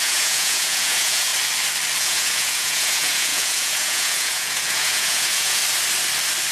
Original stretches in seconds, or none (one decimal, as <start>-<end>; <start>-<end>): 1.3-2.0; 5.6-6.5